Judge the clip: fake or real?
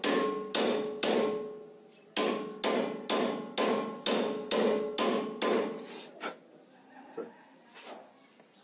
real